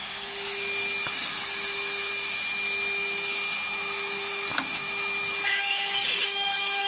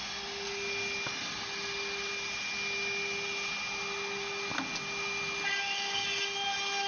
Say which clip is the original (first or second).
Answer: second